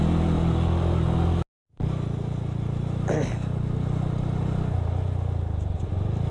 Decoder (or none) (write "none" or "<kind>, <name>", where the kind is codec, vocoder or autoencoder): none